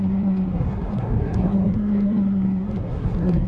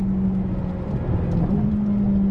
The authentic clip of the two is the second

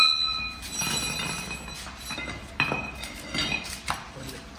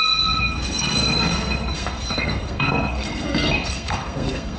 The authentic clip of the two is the first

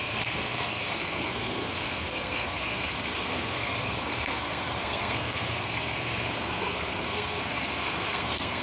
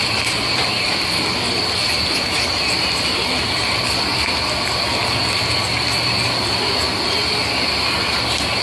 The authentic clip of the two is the second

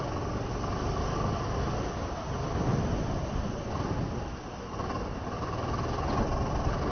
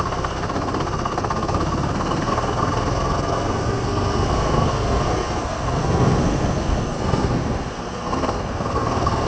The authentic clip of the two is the first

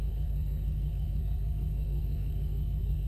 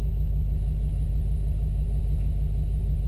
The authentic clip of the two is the second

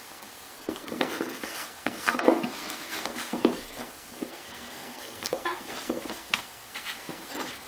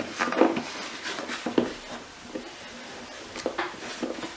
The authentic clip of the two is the second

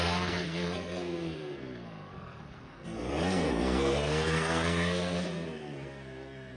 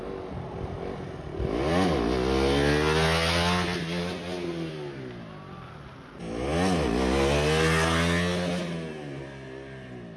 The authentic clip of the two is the second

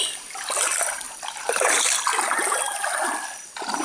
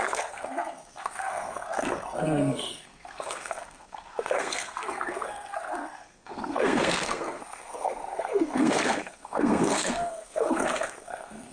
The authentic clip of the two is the first